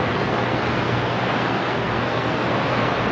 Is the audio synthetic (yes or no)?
yes